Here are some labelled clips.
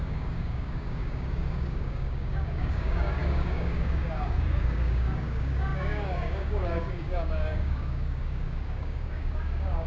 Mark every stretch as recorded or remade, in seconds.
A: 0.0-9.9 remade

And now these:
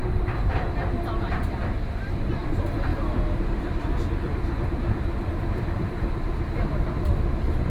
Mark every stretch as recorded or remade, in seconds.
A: 0.0-1.8 recorded; 1.8-2.5 remade; 2.5-2.9 recorded; 2.9-7.7 remade